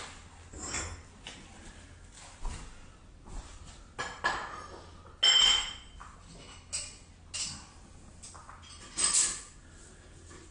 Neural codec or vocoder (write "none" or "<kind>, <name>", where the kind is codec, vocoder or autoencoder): none